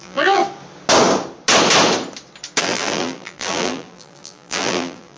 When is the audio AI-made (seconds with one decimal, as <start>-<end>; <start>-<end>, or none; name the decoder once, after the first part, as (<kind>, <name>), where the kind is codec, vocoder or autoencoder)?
0.0-0.4 (vocoder, BigVGAN v2); 2.6-5.2

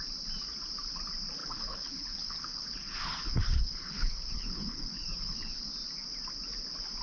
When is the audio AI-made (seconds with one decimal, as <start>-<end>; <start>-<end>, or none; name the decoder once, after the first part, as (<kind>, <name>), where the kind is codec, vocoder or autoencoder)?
1.4-5.6 (codec, HILCodec)

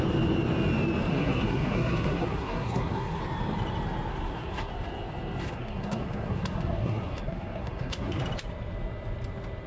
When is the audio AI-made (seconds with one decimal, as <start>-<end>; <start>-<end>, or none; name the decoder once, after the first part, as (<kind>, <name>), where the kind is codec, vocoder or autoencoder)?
1.1-3.2 (codec, SNAC); 4.1-4.7; 5.4-8.2

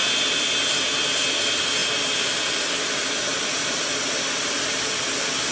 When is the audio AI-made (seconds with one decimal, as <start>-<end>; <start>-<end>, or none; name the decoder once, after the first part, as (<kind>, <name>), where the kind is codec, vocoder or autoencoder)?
none

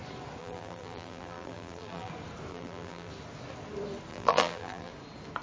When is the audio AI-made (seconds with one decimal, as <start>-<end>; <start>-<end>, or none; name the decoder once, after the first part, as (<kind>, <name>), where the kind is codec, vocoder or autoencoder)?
0.4-2.1 (vocoder, BigVGAN v2); 2.5-3.1; 4.1-4.9

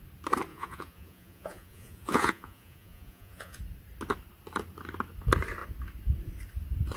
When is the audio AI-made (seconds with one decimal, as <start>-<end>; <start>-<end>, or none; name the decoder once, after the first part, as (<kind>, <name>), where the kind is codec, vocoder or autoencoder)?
0.5-3.6 (vocoder, Vocos)

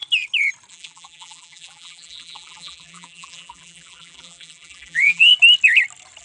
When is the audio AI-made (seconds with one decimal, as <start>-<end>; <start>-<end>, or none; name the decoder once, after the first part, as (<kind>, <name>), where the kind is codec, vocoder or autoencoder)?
0.7-5.3 (vocoder, BigVGAN v2)

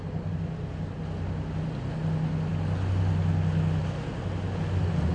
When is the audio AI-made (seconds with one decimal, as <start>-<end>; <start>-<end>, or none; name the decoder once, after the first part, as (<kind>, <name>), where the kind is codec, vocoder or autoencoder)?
none